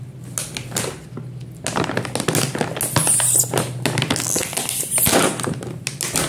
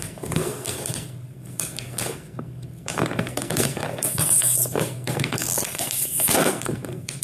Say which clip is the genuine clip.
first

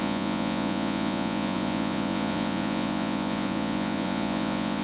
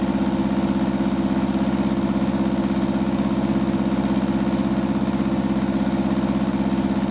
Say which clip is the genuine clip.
second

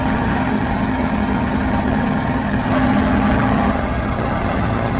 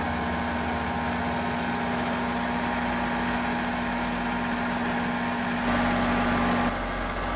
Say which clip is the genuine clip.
second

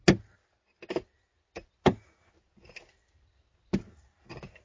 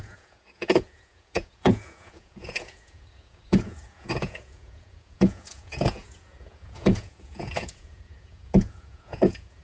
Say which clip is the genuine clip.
first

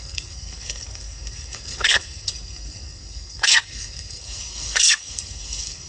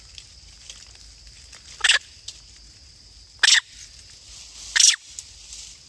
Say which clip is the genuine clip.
second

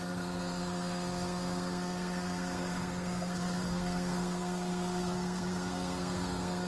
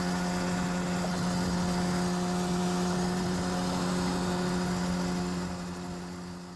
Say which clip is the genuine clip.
second